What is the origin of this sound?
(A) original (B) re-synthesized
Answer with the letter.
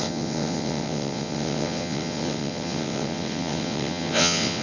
B